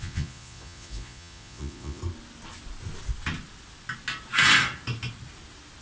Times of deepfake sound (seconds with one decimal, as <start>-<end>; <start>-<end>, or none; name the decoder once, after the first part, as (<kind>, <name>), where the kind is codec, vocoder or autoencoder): 0.0-2.0 (vocoder, Vocos)